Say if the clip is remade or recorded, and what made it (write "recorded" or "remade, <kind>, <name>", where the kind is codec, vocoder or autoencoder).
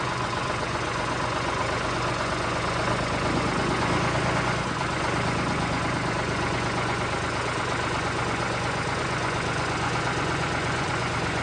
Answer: remade, vocoder, Vocos